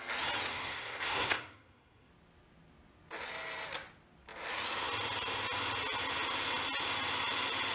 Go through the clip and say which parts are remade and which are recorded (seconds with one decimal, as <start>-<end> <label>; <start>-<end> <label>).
0.0-0.5 recorded; 0.5-2.1 remade; 2.1-7.7 recorded